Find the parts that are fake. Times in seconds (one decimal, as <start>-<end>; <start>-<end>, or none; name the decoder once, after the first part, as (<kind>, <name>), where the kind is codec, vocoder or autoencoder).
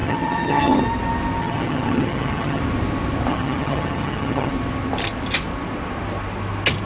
0.0-0.8 (vocoder, HiFi-GAN); 1.4-2.6; 3.3-4.5